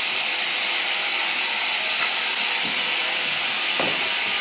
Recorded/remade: remade